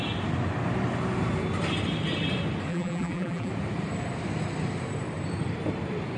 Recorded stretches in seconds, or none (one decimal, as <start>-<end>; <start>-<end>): 0.0-2.7; 3.5-6.2